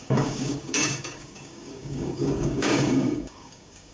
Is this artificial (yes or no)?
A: yes